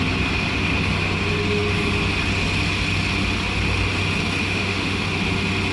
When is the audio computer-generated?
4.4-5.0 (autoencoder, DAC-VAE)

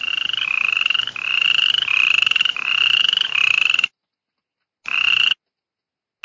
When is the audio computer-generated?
none

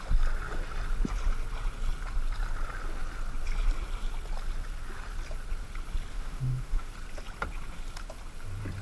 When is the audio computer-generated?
6.1-6.9 (autoencoder, DAC-VAE)

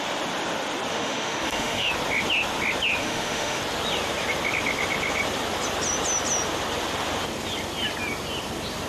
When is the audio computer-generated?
0.9-1.9 (autoencoder, DAC-VAE); 3.0-3.6

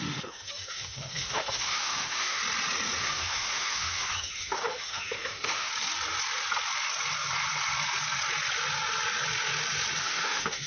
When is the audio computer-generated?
0.0-2.4 (autoencoder, DAC-VAE); 3.0-5.7; 10.0-10.7